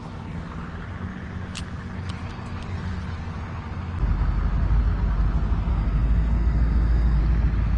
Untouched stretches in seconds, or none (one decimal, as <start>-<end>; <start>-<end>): 0.0-5.7; 7.2-7.8